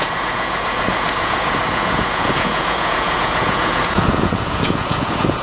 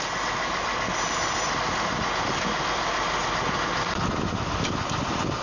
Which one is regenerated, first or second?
first